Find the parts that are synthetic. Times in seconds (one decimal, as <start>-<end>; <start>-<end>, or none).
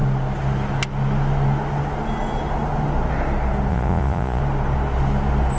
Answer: 3.7-4.4